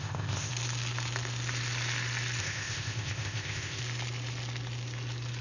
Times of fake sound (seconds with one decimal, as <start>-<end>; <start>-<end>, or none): 0.0-0.5; 2.4-3.8